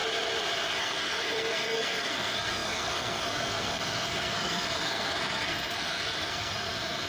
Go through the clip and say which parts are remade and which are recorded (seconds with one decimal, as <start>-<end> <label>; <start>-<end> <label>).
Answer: 0.0-0.8 recorded; 0.8-7.1 remade